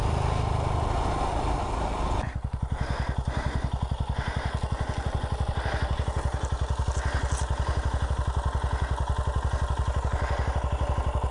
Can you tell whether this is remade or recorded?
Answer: recorded